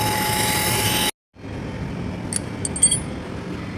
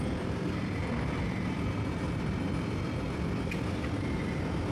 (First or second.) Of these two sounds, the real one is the first